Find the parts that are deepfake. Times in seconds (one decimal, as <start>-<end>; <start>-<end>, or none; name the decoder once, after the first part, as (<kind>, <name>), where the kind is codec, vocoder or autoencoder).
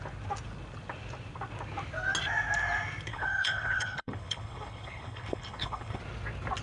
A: 3.1-6.0 (codec, HILCodec)